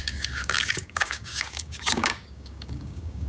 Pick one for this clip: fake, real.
fake